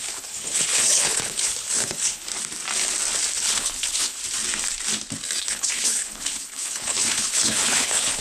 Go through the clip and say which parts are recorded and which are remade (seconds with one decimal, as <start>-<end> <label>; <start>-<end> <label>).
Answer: 0.0-2.3 remade; 2.3-3.5 recorded; 3.5-4.2 remade; 4.2-5.4 recorded; 5.4-8.2 remade